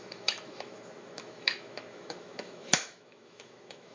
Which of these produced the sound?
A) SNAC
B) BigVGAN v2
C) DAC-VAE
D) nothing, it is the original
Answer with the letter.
C